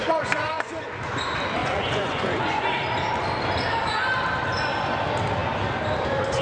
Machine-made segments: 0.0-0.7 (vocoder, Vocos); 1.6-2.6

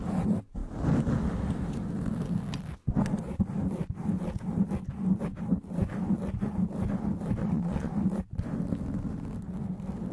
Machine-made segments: 7.4-7.9 (vocoder, Vocos)

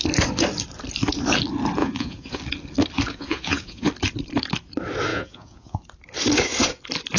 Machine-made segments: 1.8-2.4 (vocoder, Vocos); 3.1-3.9; 5.1-5.8

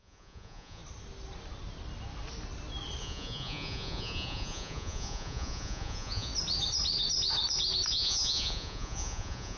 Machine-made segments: 0.0-0.8 (vocoder, Vocos); 3.0-6.3; 7.9-9.6

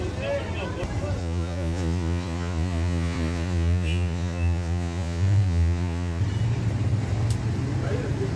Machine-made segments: 1.2-6.2 (vocoder, Vocos)